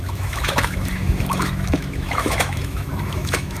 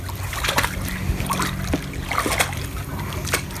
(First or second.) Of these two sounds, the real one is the second